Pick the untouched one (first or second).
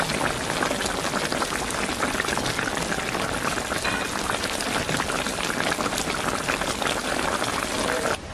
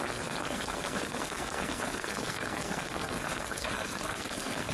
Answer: first